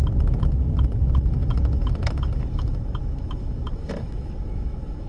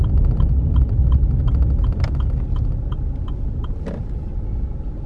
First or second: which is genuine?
second